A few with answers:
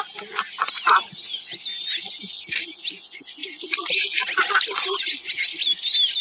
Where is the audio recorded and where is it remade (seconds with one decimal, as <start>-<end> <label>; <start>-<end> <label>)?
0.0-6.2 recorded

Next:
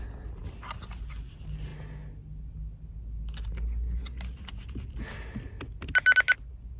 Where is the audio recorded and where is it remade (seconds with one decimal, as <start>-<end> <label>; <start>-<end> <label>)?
0.0-6.8 recorded

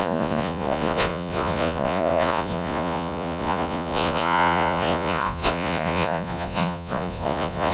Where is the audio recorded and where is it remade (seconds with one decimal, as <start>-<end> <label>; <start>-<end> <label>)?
0.0-7.7 remade

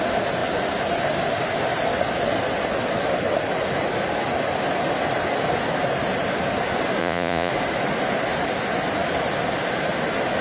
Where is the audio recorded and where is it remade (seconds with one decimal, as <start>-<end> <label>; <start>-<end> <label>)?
0.0-7.0 recorded; 7.0-7.5 remade; 7.5-10.4 recorded

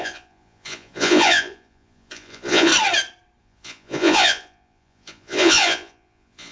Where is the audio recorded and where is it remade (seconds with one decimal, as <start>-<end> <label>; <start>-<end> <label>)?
0.0-2.7 remade; 2.7-3.4 recorded; 3.4-6.5 remade